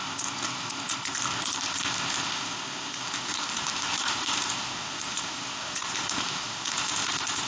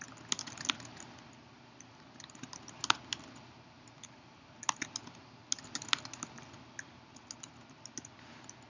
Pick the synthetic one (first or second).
first